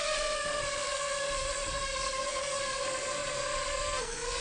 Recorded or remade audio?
remade